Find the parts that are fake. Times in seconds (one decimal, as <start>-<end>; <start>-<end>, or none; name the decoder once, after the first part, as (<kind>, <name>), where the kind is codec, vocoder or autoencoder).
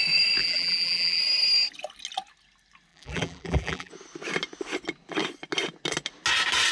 0.4-1.2 (vocoder, BigVGAN v2); 2.9-3.9